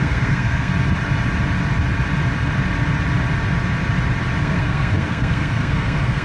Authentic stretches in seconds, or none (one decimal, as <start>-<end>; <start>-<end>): 0.7-4.4

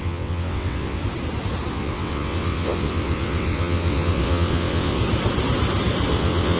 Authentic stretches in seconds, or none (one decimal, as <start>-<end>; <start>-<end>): 1.0-1.7; 5.0-6.1

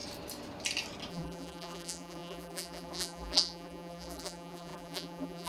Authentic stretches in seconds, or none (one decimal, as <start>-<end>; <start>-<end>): 0.0-1.1

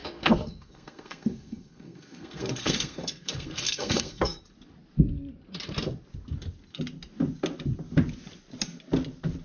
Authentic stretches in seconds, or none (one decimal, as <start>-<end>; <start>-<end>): 4.4-9.4

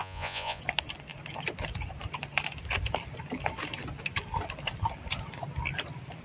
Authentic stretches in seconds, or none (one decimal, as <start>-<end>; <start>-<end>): 0.6-6.2

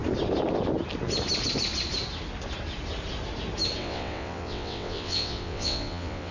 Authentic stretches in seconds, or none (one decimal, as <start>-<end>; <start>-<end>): 0.0-3.8

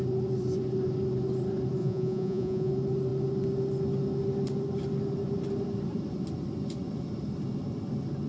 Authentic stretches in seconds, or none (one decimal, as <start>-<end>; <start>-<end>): 0.0-1.8; 2.7-8.3